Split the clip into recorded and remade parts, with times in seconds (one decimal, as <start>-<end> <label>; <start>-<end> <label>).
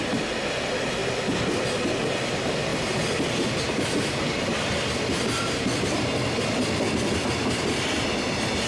0.0-1.0 recorded; 1.0-1.6 remade; 1.6-2.7 recorded; 2.7-7.3 remade; 7.3-8.7 recorded